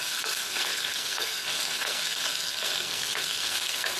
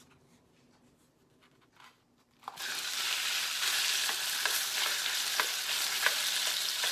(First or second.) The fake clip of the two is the first